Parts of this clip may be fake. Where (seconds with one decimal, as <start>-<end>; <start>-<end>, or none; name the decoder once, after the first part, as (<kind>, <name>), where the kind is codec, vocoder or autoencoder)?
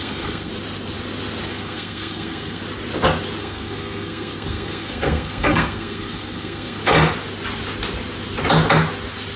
0.0-0.5 (codec, SNAC); 1.5-2.6; 3.4-6.8